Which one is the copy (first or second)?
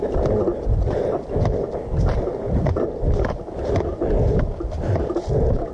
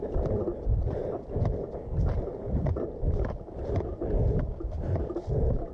second